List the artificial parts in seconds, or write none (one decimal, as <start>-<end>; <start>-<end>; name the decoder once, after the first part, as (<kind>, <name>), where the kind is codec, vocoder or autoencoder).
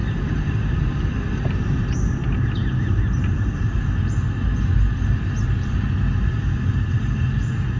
none